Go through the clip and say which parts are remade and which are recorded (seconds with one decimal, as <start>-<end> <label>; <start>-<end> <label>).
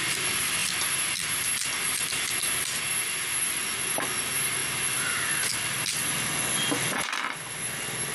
0.0-8.1 recorded